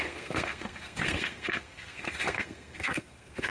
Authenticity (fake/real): fake